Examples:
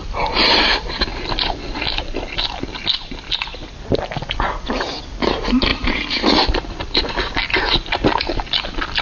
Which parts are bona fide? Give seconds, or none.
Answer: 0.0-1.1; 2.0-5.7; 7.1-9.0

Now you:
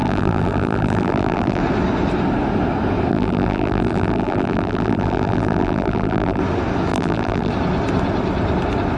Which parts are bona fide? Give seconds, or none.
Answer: 1.6-3.1; 6.4-6.9; 7.5-9.0